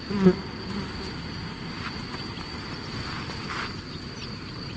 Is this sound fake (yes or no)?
no